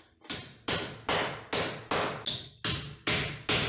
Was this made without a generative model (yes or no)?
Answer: yes